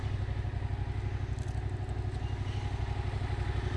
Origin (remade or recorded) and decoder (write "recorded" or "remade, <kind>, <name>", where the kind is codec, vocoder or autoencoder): recorded